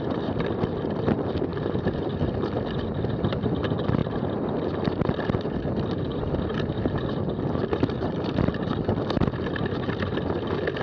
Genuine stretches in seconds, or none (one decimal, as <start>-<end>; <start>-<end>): 0.0-10.8